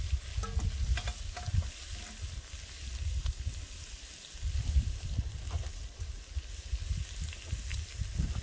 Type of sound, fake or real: real